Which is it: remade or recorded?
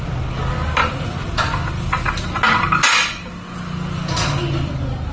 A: recorded